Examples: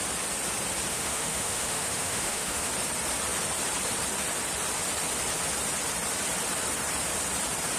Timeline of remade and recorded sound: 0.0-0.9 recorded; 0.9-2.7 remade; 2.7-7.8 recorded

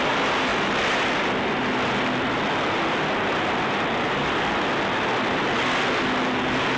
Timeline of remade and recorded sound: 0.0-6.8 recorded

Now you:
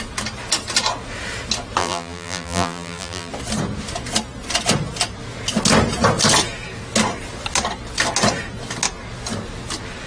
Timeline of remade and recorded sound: 0.0-1.8 recorded; 1.8-3.3 remade; 3.3-10.1 recorded

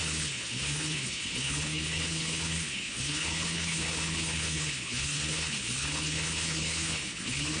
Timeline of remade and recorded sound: 0.0-7.6 remade

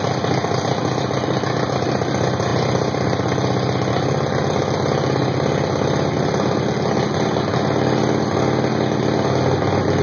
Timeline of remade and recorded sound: 0.0-10.0 recorded